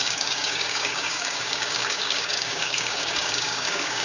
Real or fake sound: fake